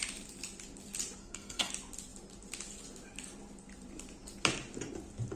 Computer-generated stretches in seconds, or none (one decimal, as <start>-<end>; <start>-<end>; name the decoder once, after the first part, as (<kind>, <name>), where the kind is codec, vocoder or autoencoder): 1.2-1.7 (codec, SNAC)